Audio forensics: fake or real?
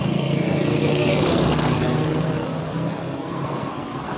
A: fake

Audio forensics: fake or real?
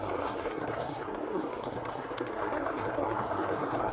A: fake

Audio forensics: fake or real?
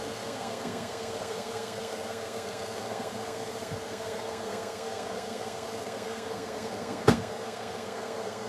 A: fake